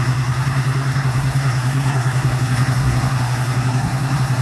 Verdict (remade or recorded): remade